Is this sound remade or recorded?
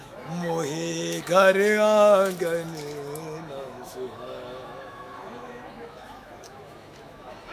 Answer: remade